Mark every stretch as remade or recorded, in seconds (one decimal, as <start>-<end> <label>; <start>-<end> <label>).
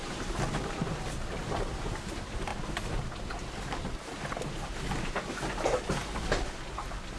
0.0-7.2 recorded